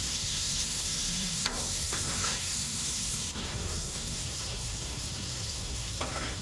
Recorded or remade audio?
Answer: remade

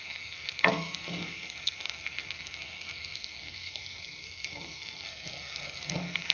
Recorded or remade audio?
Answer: remade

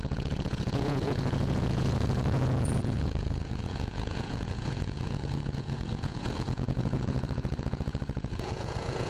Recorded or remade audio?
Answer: remade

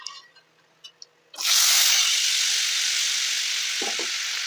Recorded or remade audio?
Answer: recorded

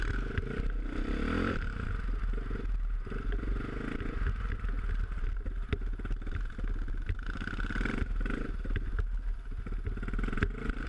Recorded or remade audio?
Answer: recorded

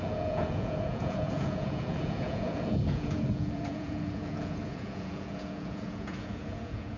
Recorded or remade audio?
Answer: remade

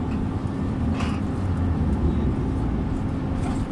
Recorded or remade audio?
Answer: recorded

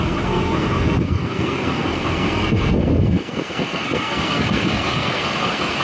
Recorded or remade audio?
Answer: remade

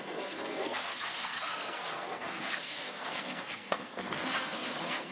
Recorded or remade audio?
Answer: remade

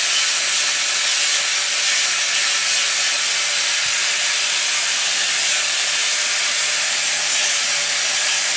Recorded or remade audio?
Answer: recorded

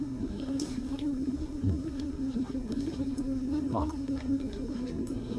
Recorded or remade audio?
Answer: remade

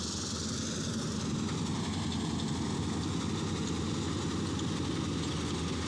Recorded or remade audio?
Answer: recorded